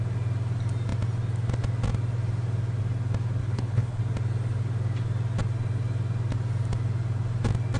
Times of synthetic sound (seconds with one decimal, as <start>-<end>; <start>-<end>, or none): 3.4-4.0